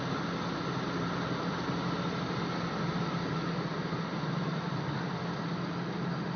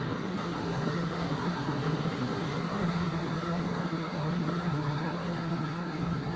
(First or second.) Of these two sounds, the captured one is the first